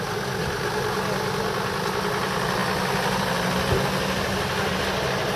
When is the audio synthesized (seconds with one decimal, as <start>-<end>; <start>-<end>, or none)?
none